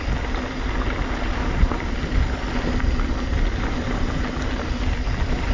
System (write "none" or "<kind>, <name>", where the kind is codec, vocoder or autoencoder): none